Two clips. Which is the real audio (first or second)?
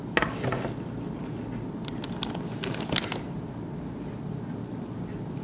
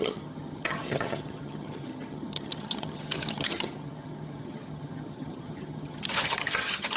first